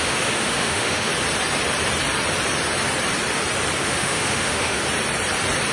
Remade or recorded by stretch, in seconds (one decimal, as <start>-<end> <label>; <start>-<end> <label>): 0.0-1.1 remade; 1.1-3.8 recorded; 3.8-4.8 remade; 4.8-5.7 recorded